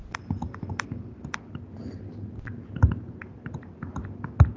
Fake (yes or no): no